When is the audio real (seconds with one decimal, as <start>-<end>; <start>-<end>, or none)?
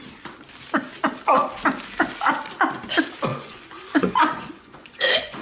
0.0-3.3